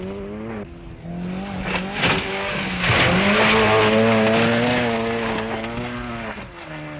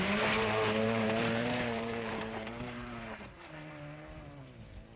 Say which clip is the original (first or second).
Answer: first